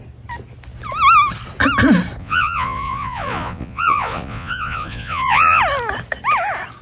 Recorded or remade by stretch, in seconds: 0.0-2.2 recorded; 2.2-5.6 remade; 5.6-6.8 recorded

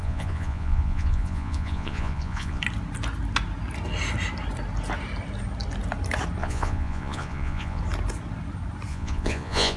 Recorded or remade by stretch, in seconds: 0.0-2.6 remade; 2.6-6.4 recorded; 6.4-7.8 remade; 7.8-8.9 recorded; 8.9-9.8 remade

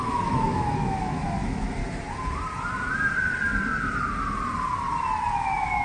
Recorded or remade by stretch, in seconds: 0.0-1.8 remade; 1.8-5.3 recorded; 5.3-5.8 remade